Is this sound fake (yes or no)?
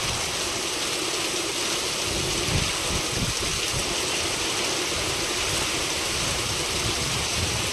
no